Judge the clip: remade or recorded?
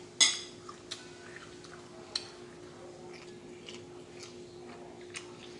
recorded